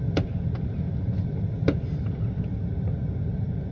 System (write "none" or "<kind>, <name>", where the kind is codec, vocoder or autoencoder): none